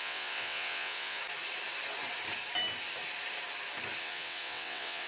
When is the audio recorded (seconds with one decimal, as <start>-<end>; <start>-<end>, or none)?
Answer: 1.2-4.0